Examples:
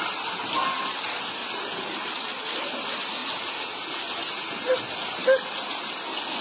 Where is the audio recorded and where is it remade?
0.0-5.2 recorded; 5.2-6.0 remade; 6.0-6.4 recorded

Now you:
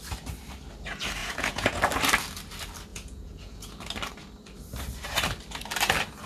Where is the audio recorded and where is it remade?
0.0-1.2 recorded; 1.2-1.8 remade; 1.8-2.9 recorded; 2.9-3.8 remade; 3.8-6.3 recorded

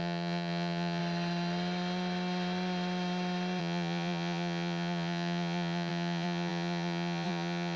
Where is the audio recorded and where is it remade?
0.0-1.0 remade; 1.0-3.6 recorded; 3.6-7.8 remade

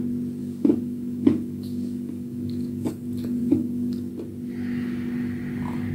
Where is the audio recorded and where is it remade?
0.0-0.4 recorded; 0.4-2.9 remade; 2.9-3.4 recorded; 3.4-4.1 remade; 4.1-5.9 recorded

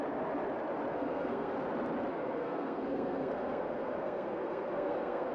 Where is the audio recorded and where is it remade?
0.0-0.9 recorded; 0.9-1.5 remade; 1.5-2.1 recorded; 2.1-5.3 remade

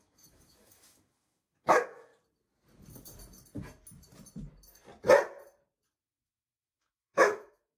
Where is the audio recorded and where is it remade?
0.0-2.1 remade; 2.1-6.0 recorded; 6.0-7.8 remade

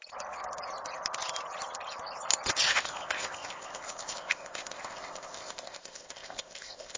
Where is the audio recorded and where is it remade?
0.0-2.7 recorded; 2.7-7.0 remade